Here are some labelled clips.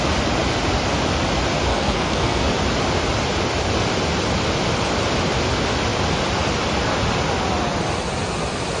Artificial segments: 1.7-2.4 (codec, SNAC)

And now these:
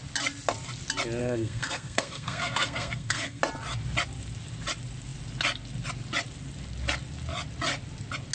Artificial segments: 1.2-3.4 (codec, SNAC)